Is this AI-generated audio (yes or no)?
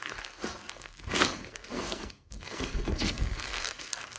yes